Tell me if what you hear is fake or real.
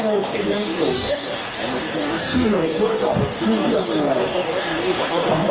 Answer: fake